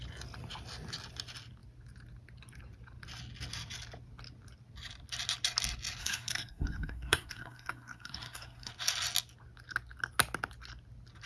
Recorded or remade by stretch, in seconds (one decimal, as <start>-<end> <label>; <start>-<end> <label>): 0.0-6.0 recorded; 6.0-8.7 remade; 8.7-11.3 recorded

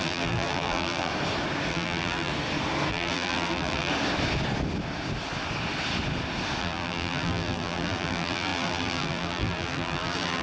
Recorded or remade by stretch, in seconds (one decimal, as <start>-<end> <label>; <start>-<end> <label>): 0.0-1.1 remade; 1.1-1.7 recorded; 1.7-2.3 remade; 2.3-2.9 recorded; 2.9-3.9 remade; 3.9-6.6 recorded; 6.6-10.4 remade

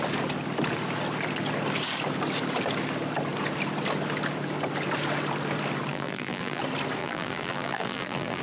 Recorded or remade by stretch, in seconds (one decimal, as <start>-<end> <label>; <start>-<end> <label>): 0.0-5.9 recorded; 5.9-6.6 remade; 6.6-7.0 recorded; 7.0-8.4 remade

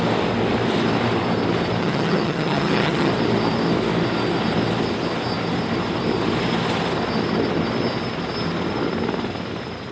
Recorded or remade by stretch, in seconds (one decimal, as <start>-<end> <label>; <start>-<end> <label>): 0.0-1.8 recorded; 1.8-3.1 remade; 3.1-9.9 recorded

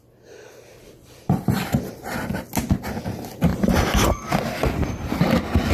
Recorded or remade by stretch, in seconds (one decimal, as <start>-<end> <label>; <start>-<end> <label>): 0.0-0.7 recorded; 0.7-2.3 remade; 2.3-5.7 recorded